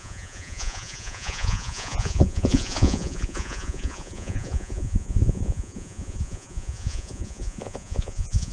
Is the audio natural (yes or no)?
no